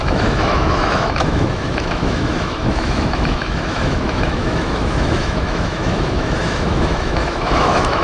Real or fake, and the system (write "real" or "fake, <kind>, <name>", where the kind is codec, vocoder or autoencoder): fake, autoencoder, DAC-VAE